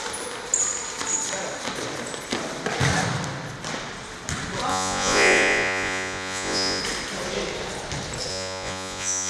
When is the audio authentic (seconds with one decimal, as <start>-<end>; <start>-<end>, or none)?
0.0-4.7; 6.8-8.3